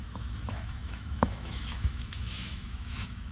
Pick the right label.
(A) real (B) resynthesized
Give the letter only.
B